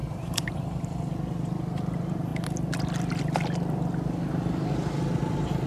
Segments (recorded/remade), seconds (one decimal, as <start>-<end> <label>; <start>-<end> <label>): 0.0-1.1 remade; 1.1-5.7 recorded